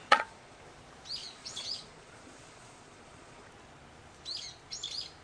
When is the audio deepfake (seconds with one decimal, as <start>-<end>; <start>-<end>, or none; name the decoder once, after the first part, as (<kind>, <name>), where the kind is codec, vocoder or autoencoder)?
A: 0.0-0.6 (vocoder, Vocos); 1.2-3.5